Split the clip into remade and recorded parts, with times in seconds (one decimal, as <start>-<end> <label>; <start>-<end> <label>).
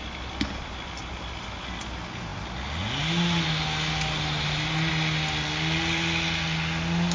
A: 0.0-7.1 recorded